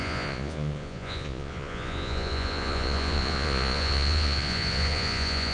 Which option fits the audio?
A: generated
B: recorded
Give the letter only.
A